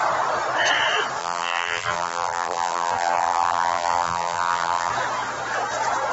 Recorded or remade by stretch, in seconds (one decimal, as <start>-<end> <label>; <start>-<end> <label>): 0.0-1.2 recorded; 1.2-4.9 remade; 4.9-6.1 recorded